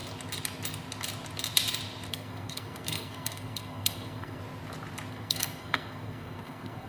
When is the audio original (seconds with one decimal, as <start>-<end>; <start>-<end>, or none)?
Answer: 0.0-2.1; 4.4-5.1